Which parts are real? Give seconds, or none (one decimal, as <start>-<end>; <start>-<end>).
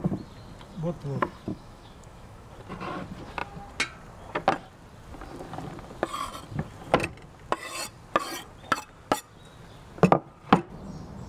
0.0-1.5; 2.5-11.3